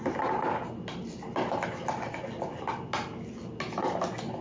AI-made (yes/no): no